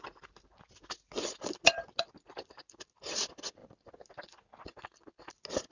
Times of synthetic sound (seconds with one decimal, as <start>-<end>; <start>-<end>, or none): none